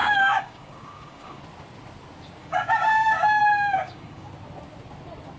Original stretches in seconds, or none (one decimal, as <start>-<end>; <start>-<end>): 1.4-2.4; 4.3-5.4